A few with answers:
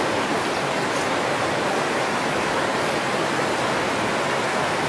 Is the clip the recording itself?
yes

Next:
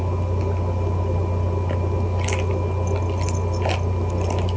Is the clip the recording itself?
yes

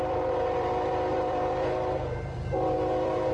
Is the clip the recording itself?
no